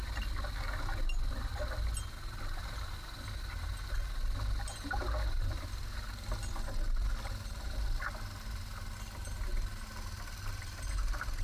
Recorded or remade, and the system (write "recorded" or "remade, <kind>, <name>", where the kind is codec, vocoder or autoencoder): recorded